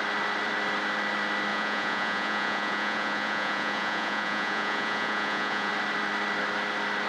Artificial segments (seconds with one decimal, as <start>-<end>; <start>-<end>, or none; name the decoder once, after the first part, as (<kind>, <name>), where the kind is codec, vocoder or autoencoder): 1.5-5.7 (vocoder, Vocos)